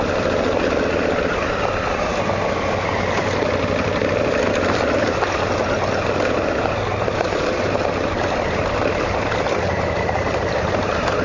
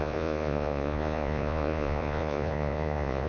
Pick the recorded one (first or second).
first